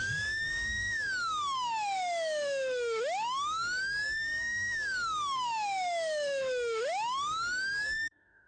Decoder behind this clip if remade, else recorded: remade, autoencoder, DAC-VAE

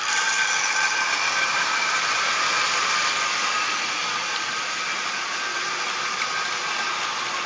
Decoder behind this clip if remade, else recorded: recorded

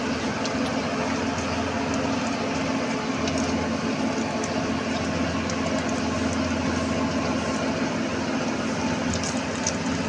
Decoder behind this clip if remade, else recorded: recorded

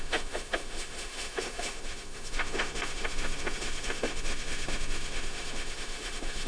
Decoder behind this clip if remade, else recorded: remade, autoencoder, DAC-VAE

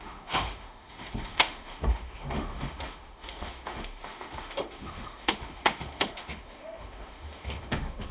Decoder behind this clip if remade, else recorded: remade, autoencoder, DAC-VAE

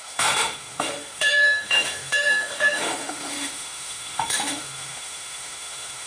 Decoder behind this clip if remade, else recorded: remade, autoencoder, DAC-VAE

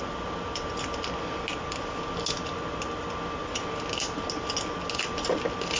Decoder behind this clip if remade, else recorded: recorded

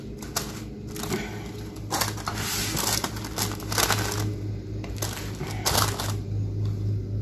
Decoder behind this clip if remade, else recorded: recorded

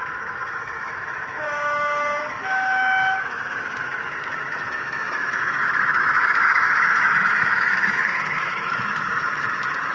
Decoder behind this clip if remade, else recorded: remade, autoencoder, DAC-VAE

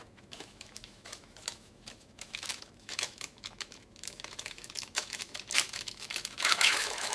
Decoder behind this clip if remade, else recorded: remade, autoencoder, DAC-VAE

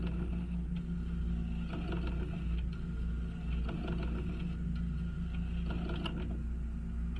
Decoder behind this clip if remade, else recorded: recorded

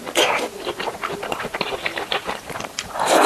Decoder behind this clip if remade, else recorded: recorded